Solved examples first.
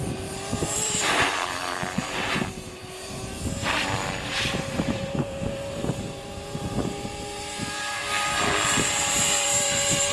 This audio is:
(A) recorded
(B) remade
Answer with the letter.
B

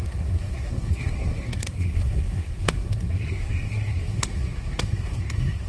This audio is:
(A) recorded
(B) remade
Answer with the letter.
B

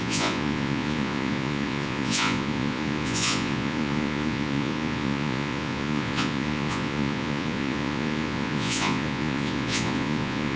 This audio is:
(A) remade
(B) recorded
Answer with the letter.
A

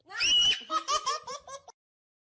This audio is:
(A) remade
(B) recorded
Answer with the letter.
B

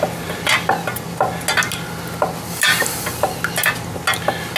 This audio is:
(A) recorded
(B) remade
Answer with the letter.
A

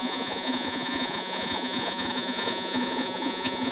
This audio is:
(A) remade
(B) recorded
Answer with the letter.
A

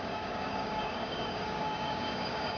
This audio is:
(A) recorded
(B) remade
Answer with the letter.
B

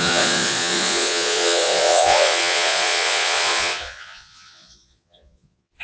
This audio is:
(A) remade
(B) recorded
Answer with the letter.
A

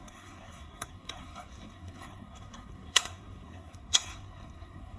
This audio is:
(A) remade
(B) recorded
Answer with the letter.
A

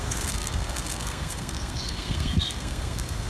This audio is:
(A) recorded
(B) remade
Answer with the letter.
B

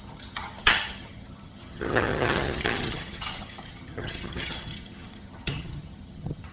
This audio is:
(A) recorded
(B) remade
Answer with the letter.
B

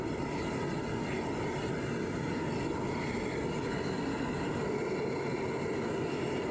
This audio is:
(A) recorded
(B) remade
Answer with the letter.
A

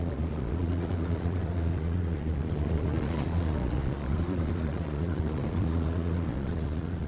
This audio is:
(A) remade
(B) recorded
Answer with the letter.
A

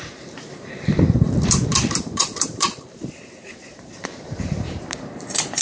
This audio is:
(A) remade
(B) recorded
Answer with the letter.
A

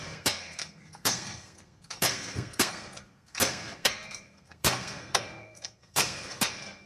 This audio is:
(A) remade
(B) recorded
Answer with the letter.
A